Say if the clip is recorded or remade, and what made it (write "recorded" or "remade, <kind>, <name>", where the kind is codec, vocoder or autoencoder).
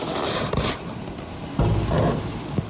recorded